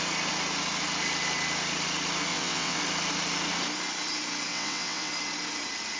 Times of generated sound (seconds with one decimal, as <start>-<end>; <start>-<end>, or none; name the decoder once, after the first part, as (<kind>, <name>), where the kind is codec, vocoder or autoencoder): 2.3-2.8 (vocoder, WaveNeXt); 4.5-5.1